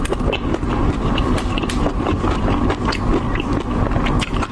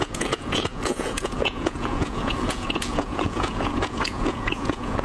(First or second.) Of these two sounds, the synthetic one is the second